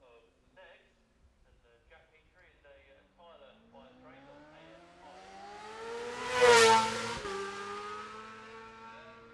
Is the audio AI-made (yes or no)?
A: no